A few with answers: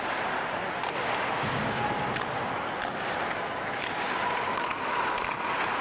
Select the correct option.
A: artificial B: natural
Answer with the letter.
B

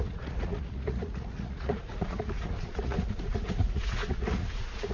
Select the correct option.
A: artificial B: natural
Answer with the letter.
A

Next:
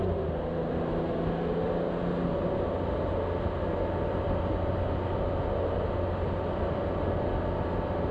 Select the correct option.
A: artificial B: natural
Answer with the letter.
B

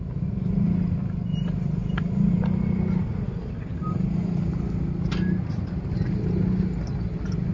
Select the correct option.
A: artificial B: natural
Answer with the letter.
B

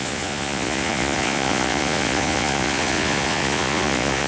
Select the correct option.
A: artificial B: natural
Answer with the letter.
A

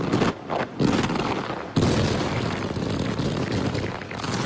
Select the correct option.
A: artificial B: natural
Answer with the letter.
B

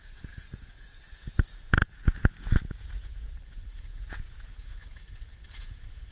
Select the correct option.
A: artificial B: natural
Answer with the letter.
A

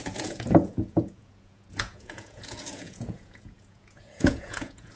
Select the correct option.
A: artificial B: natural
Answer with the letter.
A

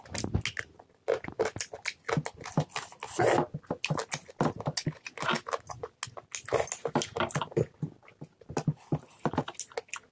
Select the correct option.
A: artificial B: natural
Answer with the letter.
B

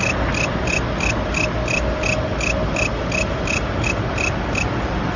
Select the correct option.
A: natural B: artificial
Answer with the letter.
A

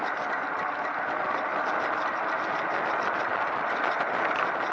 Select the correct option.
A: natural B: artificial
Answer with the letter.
A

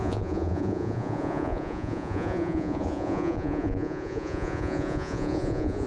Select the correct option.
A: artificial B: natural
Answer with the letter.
A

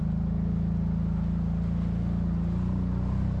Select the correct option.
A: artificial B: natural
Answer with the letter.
B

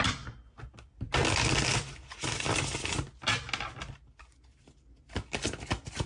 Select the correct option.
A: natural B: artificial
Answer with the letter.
A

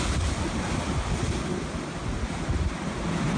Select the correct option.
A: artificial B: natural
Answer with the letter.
B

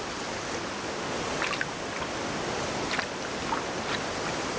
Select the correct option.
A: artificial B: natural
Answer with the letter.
B